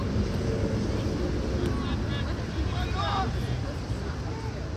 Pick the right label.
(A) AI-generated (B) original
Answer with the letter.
B